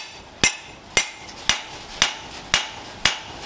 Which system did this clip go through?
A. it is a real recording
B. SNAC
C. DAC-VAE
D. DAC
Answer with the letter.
A